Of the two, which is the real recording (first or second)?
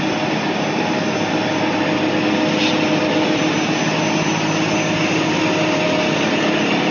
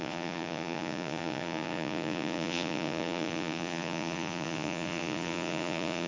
first